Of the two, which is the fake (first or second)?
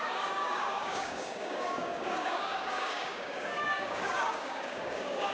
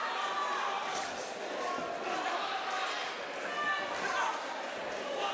first